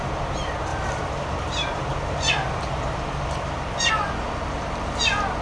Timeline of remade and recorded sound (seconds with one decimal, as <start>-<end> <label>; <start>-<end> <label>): 0.0-0.7 recorded; 0.7-3.9 remade; 3.9-5.4 recorded